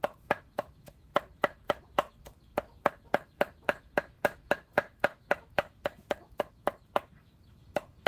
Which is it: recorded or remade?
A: remade